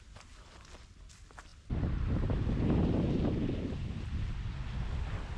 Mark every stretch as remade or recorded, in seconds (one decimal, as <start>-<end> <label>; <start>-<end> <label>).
0.0-5.4 recorded